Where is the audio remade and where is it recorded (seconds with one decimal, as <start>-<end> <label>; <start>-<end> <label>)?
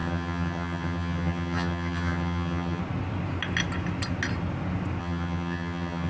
0.0-2.8 remade; 2.8-5.0 recorded; 5.0-6.1 remade